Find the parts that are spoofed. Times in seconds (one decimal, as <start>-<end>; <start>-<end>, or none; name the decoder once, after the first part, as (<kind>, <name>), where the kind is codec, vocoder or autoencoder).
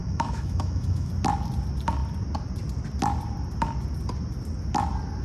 0.0-1.1 (autoencoder, DAC-VAE)